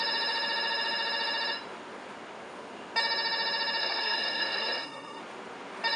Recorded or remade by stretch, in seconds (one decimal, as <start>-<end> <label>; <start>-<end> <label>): 0.0-3.8 recorded; 3.8-5.2 remade; 5.2-6.0 recorded